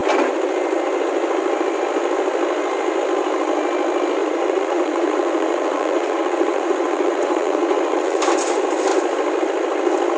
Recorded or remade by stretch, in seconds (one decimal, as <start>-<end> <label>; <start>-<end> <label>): 0.0-4.2 recorded; 4.2-8.2 remade; 8.2-10.2 recorded

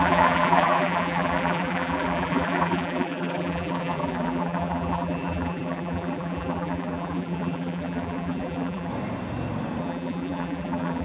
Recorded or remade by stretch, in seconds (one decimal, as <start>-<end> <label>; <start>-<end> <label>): 0.0-8.9 remade; 8.9-9.8 recorded; 9.8-11.0 remade

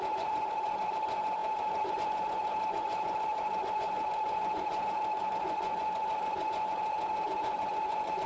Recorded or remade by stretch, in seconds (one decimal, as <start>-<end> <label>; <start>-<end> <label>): 0.0-8.3 remade

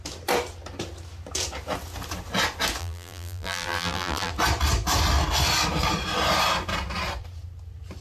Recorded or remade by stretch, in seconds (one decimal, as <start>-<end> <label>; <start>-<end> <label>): 0.0-2.8 recorded; 2.8-4.3 remade; 4.3-8.0 recorded